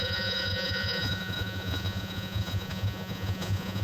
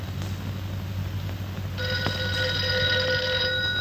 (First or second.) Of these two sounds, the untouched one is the second